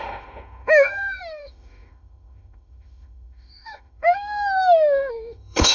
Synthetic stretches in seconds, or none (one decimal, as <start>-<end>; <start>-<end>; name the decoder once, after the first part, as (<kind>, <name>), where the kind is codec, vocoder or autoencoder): 0.0-5.7 (autoencoder, DAC-VAE)